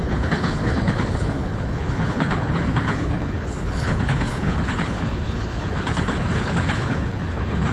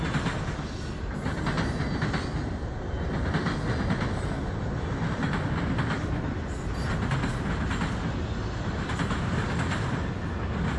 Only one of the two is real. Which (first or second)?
second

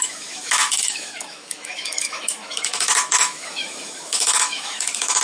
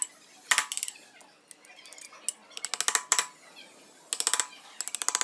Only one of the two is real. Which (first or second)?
second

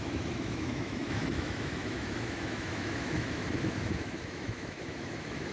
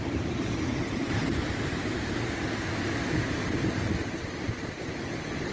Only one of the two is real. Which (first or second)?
second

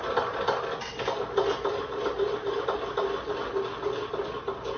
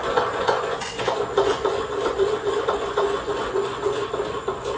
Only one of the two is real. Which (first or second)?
first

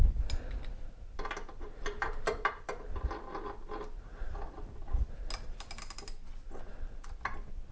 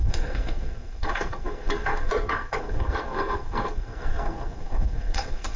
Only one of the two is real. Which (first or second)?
first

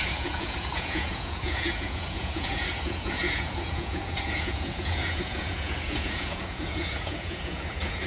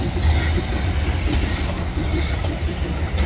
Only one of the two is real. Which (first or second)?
second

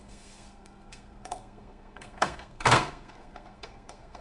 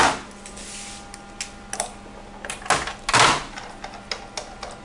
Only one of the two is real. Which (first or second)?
second